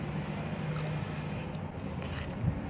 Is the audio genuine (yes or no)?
yes